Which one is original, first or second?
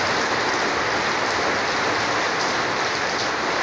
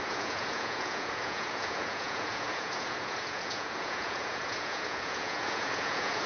first